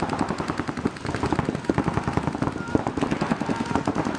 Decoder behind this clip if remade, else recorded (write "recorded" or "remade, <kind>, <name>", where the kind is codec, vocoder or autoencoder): recorded